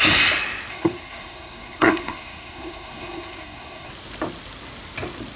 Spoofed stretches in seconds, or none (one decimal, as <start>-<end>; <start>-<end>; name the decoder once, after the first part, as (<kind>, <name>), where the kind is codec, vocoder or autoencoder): 0.7-3.9 (codec, SNAC)